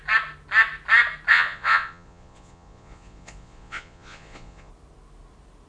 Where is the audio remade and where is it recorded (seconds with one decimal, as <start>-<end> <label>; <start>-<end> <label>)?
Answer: 0.0-1.3 recorded; 1.3-4.7 remade; 4.7-5.7 recorded